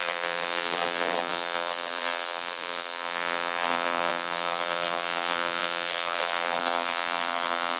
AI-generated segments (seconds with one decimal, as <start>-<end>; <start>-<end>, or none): 0.0-7.8